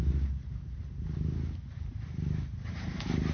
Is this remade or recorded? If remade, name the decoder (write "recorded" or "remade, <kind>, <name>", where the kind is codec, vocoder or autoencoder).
recorded